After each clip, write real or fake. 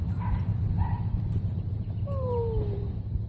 fake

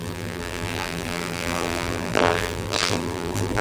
fake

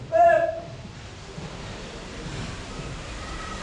fake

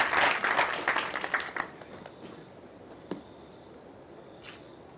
real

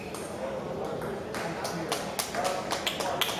real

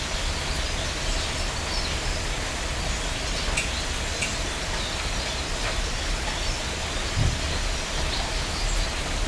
real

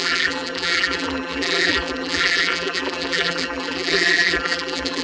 fake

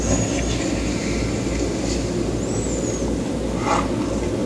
real